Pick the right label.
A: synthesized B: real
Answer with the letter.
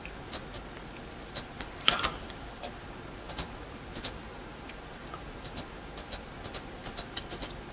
B